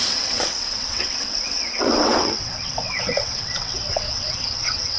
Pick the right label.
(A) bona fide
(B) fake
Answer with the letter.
B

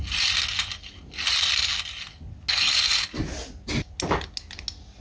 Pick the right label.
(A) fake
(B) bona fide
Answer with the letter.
B